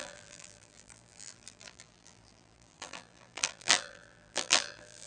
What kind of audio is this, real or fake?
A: fake